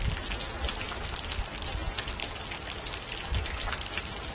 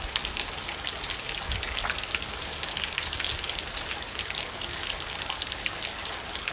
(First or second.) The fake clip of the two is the second